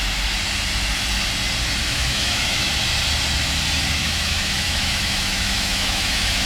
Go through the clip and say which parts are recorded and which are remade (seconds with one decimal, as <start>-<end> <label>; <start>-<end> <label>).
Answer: 0.0-1.8 recorded; 1.8-2.7 remade; 2.7-4.0 recorded; 4.0-6.5 remade